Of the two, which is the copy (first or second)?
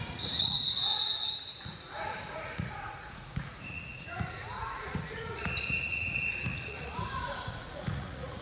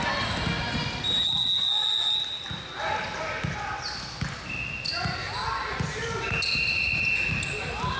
first